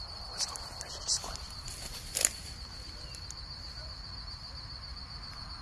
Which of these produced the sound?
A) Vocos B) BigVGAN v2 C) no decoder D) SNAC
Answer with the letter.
C